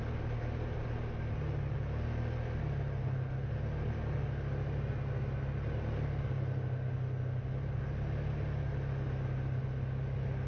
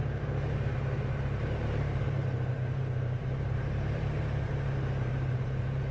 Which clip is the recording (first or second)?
first